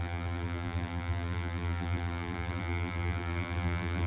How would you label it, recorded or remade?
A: remade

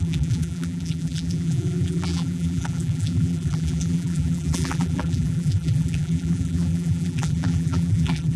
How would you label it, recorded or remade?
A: remade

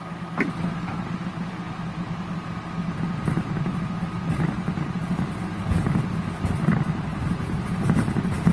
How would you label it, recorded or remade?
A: recorded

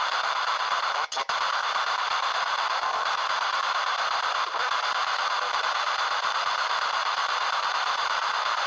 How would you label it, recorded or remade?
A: remade